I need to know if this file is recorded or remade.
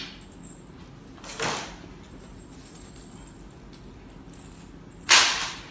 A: recorded